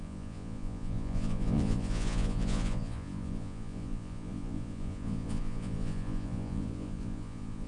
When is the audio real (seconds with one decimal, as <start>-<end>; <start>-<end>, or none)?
none